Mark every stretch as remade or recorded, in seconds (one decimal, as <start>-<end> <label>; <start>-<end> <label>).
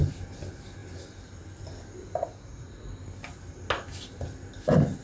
0.0-2.2 recorded; 2.2-2.9 remade; 2.9-5.0 recorded